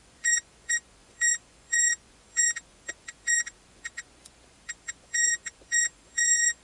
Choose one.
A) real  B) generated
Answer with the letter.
B